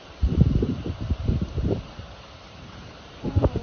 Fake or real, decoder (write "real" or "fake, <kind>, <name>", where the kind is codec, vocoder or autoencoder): fake, vocoder, BigVGAN v2